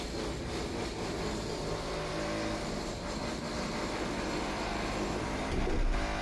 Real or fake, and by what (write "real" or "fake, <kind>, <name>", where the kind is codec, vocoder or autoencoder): real